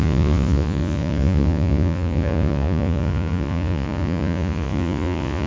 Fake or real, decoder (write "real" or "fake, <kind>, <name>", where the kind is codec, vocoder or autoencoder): fake, vocoder, Vocos